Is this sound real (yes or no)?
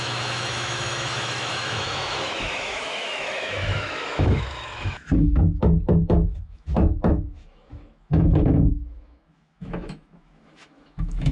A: no